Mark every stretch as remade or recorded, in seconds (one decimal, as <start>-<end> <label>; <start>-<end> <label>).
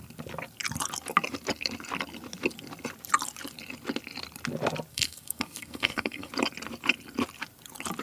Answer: 0.0-4.9 recorded; 4.9-6.3 remade; 6.3-8.0 recorded